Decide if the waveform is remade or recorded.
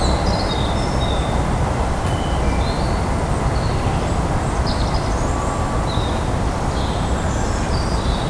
recorded